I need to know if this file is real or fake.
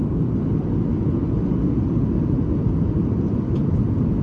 real